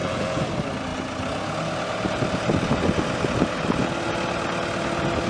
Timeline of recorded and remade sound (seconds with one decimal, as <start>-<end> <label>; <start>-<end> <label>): 0.0-0.5 remade; 0.5-5.3 recorded